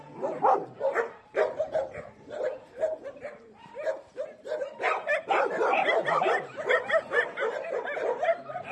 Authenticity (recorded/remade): remade